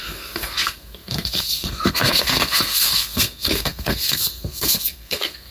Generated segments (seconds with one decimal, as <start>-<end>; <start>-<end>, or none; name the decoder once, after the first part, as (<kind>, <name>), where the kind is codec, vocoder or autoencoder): 0.0-5.5 (codec, SNAC)